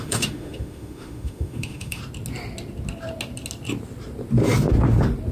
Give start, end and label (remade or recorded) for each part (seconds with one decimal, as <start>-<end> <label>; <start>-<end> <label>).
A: 0.0-2.0 remade; 2.0-5.3 recorded